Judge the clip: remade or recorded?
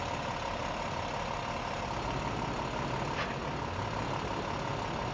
recorded